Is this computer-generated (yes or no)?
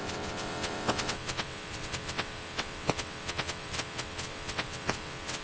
yes